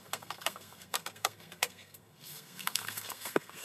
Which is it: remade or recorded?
remade